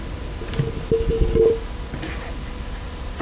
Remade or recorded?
recorded